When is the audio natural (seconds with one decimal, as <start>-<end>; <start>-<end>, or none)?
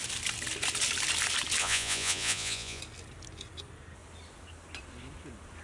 0.0-1.6; 2.8-5.6